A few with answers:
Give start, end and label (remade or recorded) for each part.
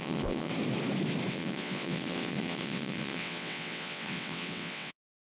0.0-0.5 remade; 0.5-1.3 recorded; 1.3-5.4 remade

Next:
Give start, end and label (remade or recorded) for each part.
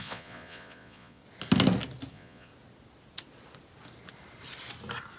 0.0-1.2 remade; 1.2-2.1 recorded; 2.1-2.5 remade; 2.5-5.2 recorded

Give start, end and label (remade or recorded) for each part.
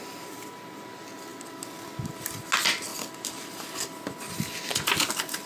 0.0-1.3 recorded; 1.3-2.4 remade; 2.4-5.5 recorded